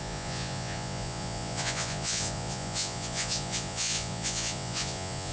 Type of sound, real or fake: fake